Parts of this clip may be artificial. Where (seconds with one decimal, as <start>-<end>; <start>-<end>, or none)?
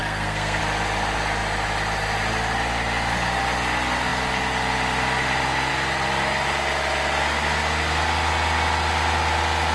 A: 0.0-0.6